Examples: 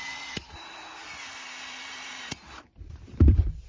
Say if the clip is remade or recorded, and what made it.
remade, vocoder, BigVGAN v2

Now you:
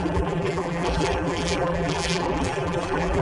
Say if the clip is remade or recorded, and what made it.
remade, vocoder, BigVGAN v2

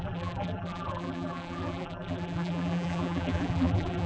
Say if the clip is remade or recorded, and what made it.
remade, vocoder, BigVGAN v2